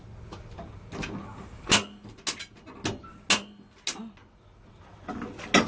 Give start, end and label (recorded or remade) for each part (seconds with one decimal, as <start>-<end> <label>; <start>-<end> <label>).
0.0-5.7 recorded